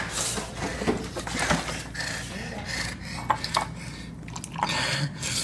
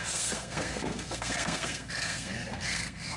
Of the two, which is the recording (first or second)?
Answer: first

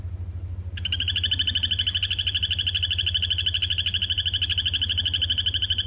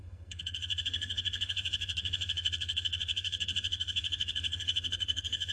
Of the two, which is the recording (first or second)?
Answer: first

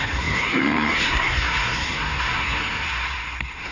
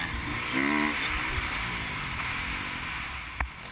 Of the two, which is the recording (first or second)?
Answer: second